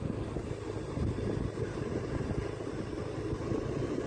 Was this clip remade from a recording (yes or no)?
no